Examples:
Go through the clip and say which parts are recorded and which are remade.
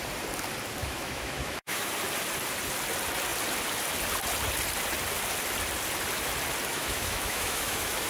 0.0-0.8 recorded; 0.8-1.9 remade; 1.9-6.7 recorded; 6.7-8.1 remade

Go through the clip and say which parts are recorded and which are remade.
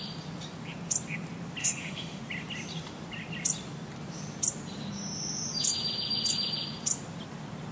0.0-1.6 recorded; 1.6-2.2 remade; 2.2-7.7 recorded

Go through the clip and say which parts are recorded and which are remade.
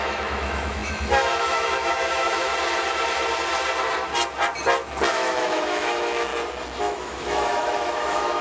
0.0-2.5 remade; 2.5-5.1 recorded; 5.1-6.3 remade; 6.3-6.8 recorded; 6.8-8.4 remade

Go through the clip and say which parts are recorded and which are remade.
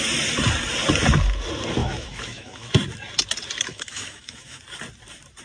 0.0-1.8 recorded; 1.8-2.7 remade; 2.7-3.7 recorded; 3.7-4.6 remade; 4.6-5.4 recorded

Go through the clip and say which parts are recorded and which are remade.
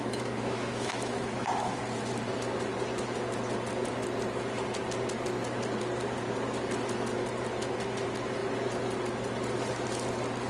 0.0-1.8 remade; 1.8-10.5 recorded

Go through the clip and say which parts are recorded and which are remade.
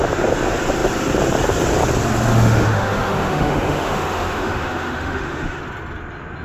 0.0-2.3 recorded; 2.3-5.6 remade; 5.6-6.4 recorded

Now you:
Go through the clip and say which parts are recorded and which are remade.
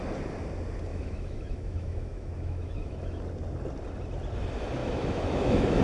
0.0-0.9 recorded; 0.9-3.2 remade; 3.2-4.8 recorded; 4.8-5.8 remade